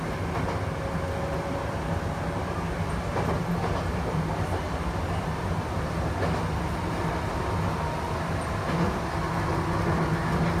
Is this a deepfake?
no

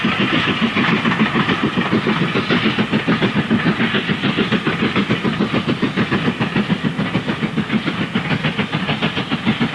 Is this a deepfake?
no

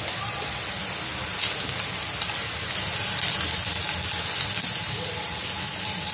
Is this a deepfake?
no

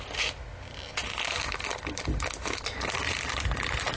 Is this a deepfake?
no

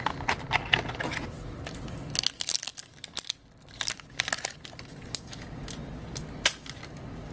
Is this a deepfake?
no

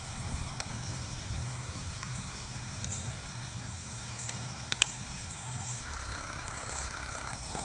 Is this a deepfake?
yes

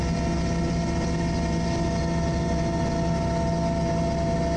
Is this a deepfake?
no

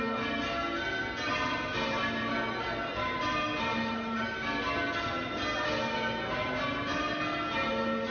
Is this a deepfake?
no